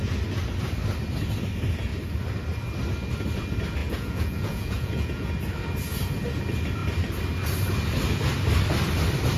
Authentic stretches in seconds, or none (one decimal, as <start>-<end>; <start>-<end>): 0.0-3.8; 5.3-9.4